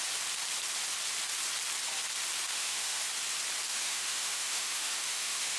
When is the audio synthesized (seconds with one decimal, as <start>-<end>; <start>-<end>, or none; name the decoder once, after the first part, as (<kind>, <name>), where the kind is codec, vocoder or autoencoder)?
2.5-3.1 (autoencoder, DAC-VAE); 3.7-5.6